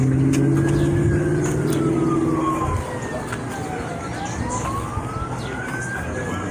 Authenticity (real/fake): real